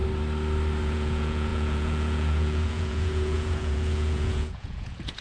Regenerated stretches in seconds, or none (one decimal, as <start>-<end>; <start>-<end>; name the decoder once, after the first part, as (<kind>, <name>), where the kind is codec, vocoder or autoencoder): 0.8-5.2 (vocoder, Vocos)